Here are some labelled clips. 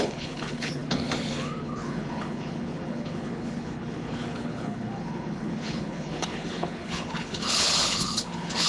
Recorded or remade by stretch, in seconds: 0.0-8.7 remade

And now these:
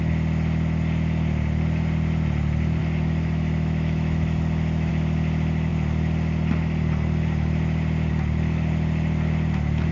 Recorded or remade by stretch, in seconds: 0.0-2.8 recorded; 2.8-4.9 remade; 4.9-9.9 recorded

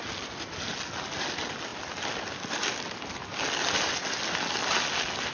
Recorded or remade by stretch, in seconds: 0.0-5.3 recorded

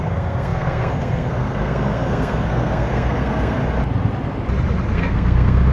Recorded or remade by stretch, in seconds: 0.0-3.6 remade; 3.6-4.9 recorded; 4.9-5.7 remade

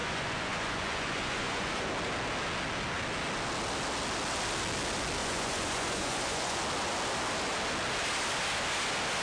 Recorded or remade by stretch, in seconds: 0.0-1.9 remade; 1.9-5.2 recorded; 5.2-6.6 remade; 6.6-9.2 recorded